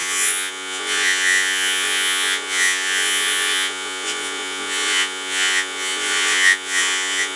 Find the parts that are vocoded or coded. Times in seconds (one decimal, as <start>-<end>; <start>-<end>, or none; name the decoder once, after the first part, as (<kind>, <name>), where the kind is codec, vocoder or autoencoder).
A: 0.0-7.4 (vocoder, Vocos)